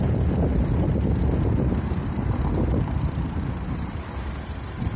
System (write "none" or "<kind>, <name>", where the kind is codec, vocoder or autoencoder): none